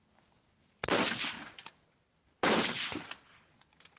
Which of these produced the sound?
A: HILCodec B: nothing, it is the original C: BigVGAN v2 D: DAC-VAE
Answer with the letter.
B